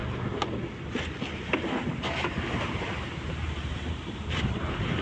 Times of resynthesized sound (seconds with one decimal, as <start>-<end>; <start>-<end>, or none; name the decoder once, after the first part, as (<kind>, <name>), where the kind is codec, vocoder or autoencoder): 1.9-5.0 (vocoder, BigVGAN v2)